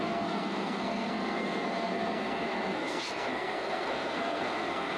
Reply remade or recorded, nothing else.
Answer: remade